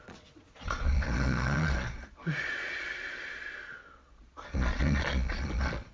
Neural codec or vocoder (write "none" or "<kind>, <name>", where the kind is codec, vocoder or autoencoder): vocoder, Vocos